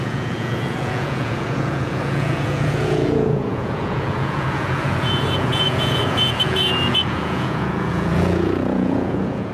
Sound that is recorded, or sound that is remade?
remade